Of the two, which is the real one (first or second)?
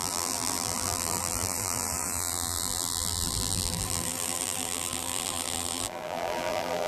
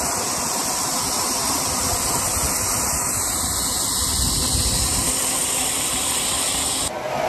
second